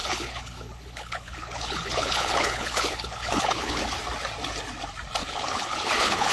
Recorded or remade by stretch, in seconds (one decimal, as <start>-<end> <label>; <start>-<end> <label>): 0.0-3.8 remade; 3.8-5.2 recorded; 5.2-6.3 remade